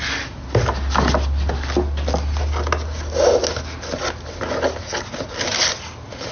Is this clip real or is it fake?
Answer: real